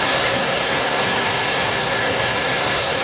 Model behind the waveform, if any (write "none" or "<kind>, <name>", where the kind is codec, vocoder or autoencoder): codec, SNAC